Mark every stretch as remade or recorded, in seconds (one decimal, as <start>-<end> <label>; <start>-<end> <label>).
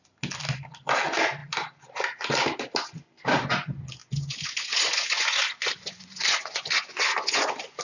0.0-4.0 recorded; 4.0-7.8 remade